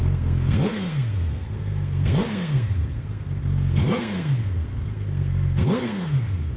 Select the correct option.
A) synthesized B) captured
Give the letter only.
A